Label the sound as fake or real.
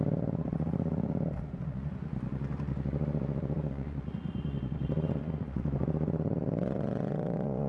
fake